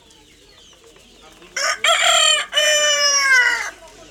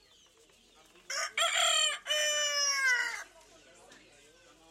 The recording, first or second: second